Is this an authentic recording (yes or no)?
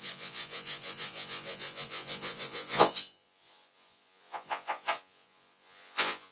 no